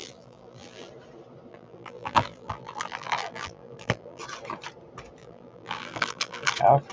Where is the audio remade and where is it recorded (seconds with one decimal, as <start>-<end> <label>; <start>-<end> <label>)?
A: 0.0-0.9 remade; 0.9-1.5 recorded; 1.5-4.2 remade; 4.2-5.2 recorded; 5.2-6.5 remade; 6.5-6.9 recorded